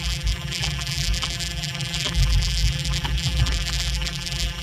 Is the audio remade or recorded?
remade